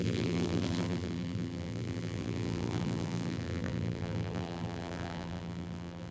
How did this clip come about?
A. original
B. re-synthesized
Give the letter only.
B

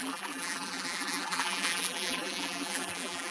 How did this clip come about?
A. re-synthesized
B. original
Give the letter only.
A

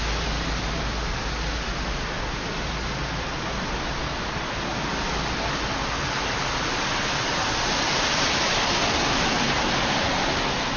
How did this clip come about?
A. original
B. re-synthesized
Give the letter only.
A